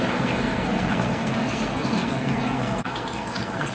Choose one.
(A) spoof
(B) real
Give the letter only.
A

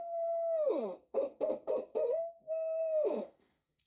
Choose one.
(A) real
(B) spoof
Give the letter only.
B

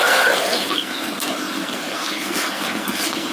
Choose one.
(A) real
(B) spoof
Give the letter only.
B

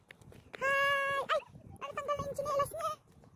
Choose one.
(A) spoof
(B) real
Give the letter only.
B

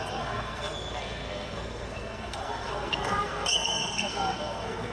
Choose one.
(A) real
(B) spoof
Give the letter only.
B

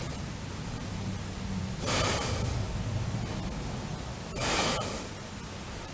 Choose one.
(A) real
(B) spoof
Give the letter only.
A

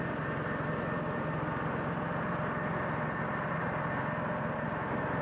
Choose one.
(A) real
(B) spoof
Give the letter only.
A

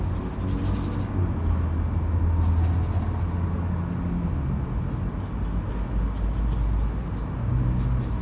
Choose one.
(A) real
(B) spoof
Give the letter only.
A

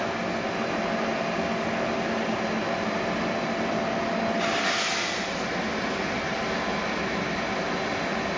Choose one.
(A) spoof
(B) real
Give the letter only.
B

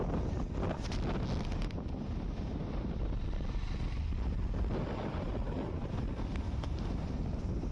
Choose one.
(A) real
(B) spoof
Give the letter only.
A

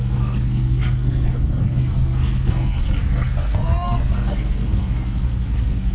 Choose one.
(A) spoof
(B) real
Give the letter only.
A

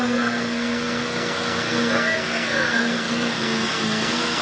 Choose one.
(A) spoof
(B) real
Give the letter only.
A